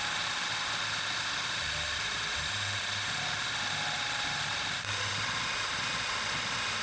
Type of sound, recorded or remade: recorded